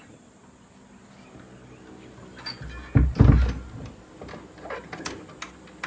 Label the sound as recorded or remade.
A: recorded